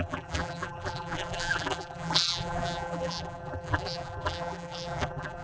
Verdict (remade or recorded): remade